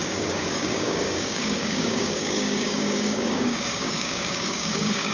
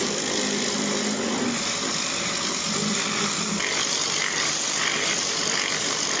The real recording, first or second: second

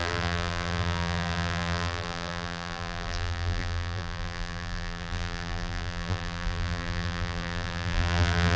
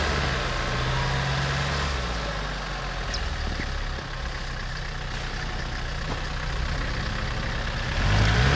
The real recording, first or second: second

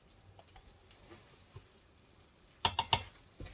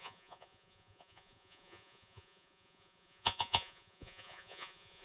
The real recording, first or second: first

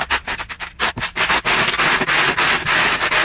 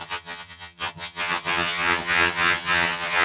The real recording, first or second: first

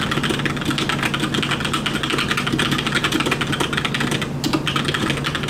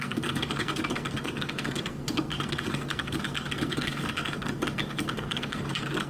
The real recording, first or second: first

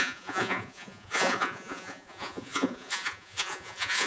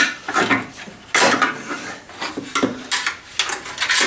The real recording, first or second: second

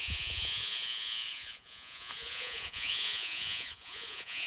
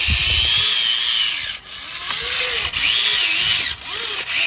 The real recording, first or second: second